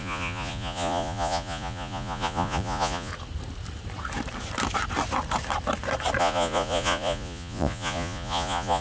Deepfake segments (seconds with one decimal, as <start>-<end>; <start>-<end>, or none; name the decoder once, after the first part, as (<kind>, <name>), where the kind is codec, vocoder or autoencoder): 0.0-3.1 (vocoder, Vocos); 6.2-8.8